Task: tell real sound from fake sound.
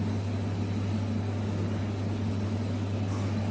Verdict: real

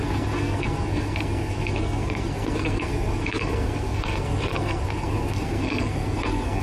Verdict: fake